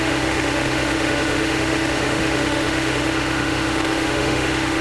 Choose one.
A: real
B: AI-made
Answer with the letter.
B